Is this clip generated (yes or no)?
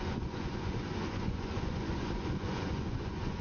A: yes